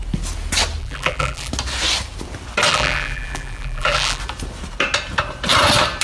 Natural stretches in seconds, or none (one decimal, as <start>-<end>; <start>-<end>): 0.0-0.8; 1.5-2.7; 4.2-6.0